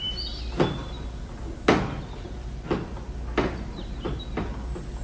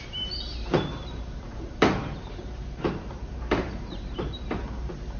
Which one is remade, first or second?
second